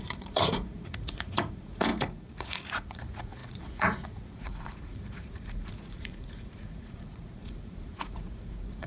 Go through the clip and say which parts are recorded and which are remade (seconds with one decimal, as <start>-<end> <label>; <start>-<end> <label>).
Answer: 0.0-8.9 remade